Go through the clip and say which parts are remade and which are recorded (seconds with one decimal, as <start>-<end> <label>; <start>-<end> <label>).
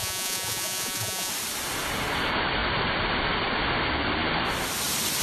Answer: 0.0-1.3 remade; 1.3-5.2 recorded